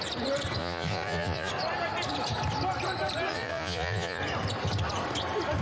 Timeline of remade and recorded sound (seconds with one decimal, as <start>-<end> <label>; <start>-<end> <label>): 0.0-0.6 recorded; 0.6-1.5 remade; 1.5-3.3 recorded; 3.3-4.2 remade; 4.2-5.6 recorded